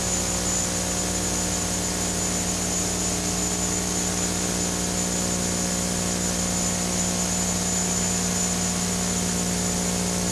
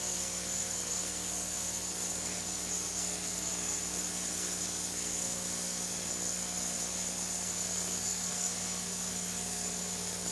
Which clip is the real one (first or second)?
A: first